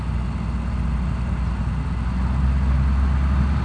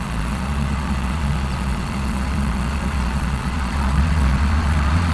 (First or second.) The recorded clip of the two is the first